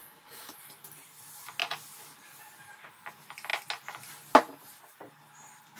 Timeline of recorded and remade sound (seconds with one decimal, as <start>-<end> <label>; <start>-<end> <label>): 0.0-0.5 remade; 0.5-5.8 recorded